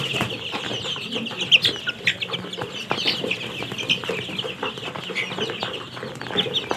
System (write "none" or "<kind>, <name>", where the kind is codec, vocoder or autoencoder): none